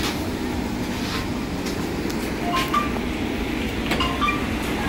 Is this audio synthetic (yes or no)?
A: no